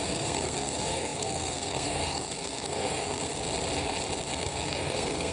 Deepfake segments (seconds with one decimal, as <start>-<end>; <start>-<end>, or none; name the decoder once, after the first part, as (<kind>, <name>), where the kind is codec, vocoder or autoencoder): 0.0-3.4 (codec, SNAC); 4.3-5.3